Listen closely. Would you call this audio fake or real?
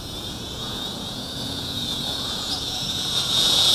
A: fake